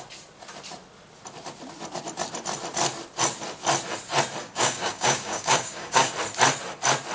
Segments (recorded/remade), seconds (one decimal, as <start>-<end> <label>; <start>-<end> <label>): 0.0-4.4 recorded; 4.4-6.1 remade; 6.1-7.1 recorded